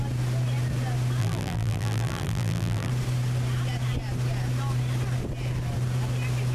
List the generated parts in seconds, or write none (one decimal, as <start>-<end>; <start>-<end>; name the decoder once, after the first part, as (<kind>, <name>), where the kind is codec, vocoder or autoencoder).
1.2-2.9 (vocoder, BigVGAN v2)